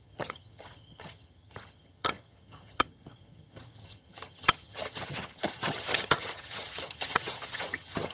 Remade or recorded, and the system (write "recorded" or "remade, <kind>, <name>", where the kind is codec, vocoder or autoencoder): remade, vocoder, HiFi-GAN